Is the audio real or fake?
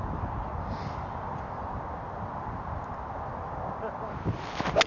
real